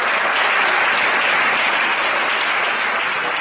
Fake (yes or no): no